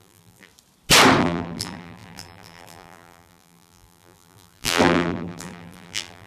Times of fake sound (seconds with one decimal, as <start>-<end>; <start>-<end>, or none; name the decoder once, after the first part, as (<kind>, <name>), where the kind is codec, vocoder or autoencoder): 0.0-0.5 (vocoder, BigVGAN v2); 1.2-6.3